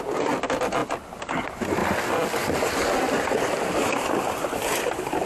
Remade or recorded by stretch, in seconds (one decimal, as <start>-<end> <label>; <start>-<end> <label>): 0.0-5.3 recorded